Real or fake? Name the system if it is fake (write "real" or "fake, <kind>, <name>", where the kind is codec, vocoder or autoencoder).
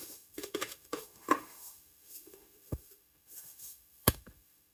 fake, autoencoder, DAC-VAE